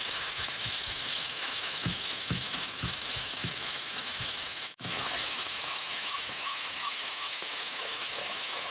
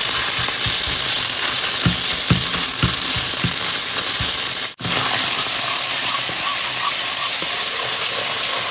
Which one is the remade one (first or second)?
first